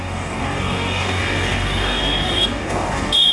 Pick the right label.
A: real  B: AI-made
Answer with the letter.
B